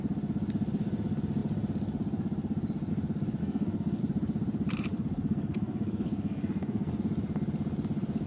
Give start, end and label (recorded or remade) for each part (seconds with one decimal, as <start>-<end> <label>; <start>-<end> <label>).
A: 0.0-3.4 recorded; 3.4-4.0 remade; 4.0-4.9 recorded; 4.9-7.0 remade; 7.0-8.3 recorded

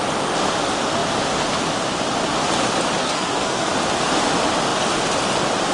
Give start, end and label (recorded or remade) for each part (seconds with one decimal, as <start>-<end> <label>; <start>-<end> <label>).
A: 0.0-3.0 recorded; 3.0-3.7 remade; 3.7-5.7 recorded